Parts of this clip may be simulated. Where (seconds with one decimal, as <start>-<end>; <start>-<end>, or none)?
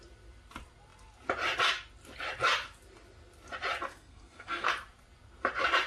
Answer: 3.9-4.7